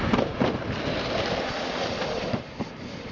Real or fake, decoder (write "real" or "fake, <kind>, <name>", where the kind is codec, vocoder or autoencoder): fake, vocoder, BigVGAN v2